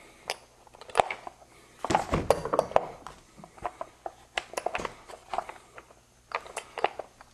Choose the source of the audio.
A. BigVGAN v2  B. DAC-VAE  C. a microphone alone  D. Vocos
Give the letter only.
C